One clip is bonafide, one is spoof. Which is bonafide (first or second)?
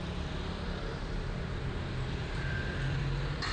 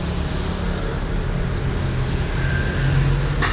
second